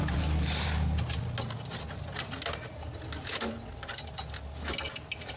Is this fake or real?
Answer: real